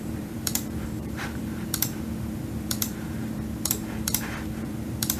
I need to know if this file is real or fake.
fake